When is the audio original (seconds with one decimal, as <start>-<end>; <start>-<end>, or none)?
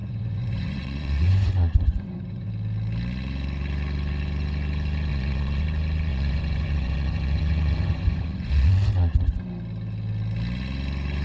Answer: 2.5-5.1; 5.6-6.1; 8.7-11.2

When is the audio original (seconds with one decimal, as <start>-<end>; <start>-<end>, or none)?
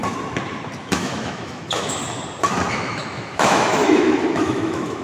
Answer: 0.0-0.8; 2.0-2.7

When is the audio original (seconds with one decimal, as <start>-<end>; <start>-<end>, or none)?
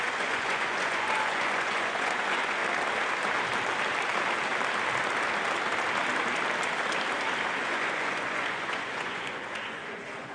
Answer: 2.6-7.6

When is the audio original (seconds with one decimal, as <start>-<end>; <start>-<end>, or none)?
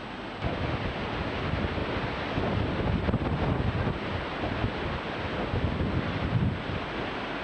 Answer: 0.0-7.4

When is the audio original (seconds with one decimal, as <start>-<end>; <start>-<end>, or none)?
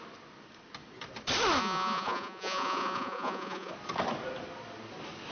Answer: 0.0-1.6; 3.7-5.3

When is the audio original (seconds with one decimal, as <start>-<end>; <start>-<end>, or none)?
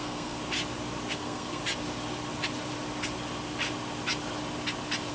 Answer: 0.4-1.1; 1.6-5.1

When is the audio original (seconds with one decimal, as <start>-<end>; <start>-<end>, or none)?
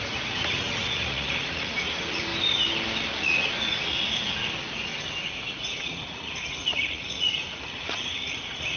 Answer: 2.3-3.2; 4.9-5.5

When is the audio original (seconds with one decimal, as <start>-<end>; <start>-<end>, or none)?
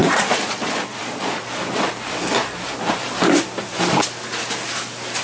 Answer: 1.4-5.2